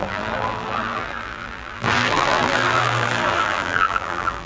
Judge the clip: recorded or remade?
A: remade